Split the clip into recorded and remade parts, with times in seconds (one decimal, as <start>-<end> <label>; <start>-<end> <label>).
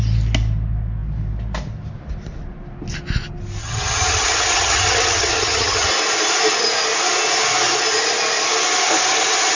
0.0-3.6 recorded; 3.6-5.9 remade; 5.9-9.6 recorded